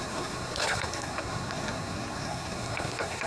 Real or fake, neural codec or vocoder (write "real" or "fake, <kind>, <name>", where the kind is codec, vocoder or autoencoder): fake, codec, SNAC